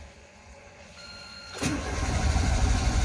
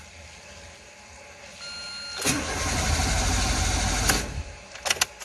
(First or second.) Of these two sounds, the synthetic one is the first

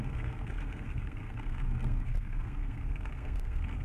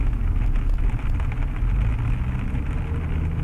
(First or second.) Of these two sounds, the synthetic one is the first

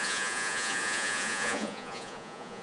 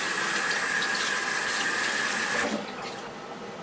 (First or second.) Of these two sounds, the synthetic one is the first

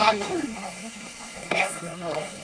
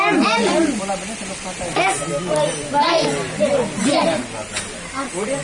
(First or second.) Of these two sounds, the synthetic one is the first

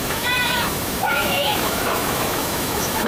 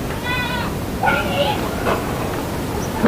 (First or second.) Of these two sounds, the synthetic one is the first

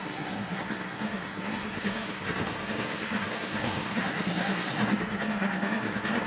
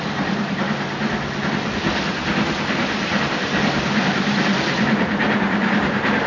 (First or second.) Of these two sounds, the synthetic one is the first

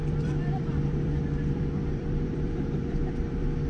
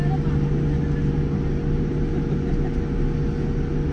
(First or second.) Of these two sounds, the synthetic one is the first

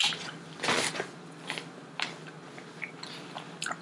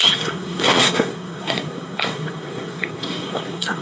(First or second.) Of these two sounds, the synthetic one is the second